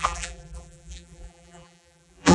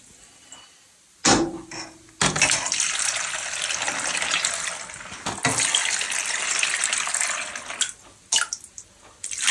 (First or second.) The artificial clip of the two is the first